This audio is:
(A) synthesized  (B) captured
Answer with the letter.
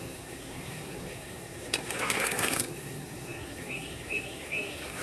A